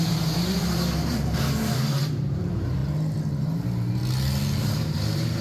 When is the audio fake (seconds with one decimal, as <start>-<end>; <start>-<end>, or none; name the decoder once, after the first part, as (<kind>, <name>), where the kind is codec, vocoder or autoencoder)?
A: 0.0-2.8 (vocoder, BigVGAN v2); 3.4-4.0; 4.6-5.4